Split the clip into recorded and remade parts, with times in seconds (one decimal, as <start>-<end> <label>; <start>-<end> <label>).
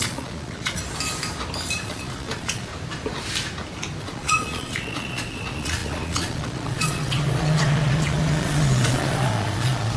0.0-0.8 remade; 0.8-1.7 recorded; 1.7-2.7 remade; 2.7-4.0 recorded; 4.0-10.0 remade